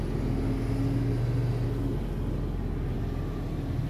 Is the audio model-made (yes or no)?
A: no